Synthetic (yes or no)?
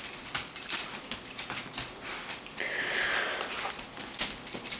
no